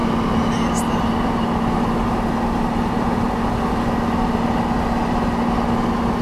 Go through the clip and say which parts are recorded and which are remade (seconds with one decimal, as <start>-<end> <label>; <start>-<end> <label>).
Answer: 0.0-6.2 recorded